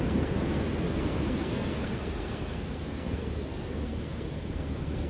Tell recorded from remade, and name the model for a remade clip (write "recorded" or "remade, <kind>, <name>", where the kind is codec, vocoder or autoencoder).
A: remade, codec, SNAC